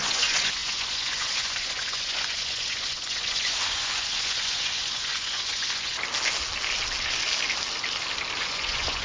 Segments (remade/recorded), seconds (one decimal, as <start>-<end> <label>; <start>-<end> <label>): 0.0-5.9 remade; 5.9-8.4 recorded; 8.4-9.0 remade